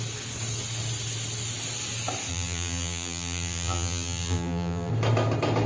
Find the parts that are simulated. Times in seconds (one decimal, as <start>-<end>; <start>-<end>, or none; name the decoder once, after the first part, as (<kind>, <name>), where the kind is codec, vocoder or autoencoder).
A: 2.3-4.9 (vocoder, BigVGAN v2)